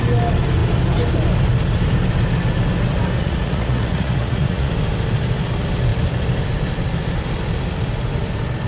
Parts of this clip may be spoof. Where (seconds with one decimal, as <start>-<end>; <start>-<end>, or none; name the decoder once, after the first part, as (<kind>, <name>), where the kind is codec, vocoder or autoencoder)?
3.2-4.7 (vocoder, Vocos)